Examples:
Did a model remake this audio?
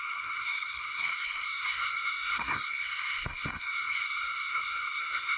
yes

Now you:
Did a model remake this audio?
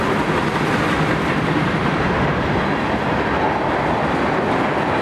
no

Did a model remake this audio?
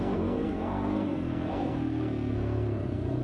yes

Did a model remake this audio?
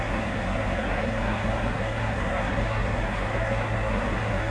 yes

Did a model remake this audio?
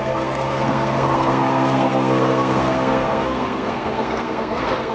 yes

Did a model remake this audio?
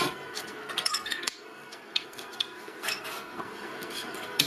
yes